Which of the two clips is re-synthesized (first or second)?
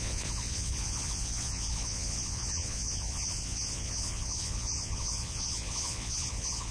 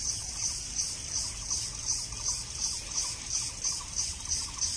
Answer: first